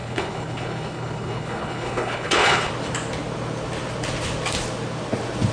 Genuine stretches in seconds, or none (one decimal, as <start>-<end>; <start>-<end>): 2.7-5.5